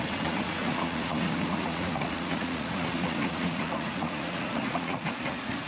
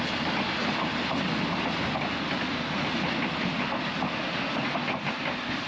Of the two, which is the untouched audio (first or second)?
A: second